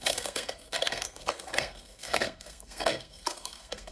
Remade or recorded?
remade